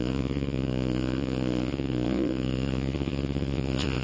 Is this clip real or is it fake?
fake